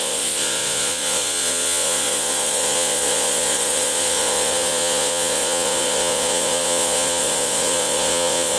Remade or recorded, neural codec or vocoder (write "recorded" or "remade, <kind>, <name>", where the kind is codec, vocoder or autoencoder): remade, vocoder, Vocos